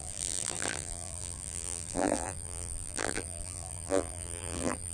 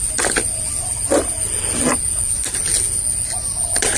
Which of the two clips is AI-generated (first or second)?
first